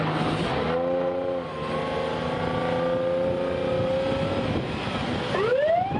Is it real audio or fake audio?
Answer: real